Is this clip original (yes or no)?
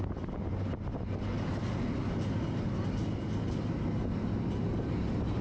yes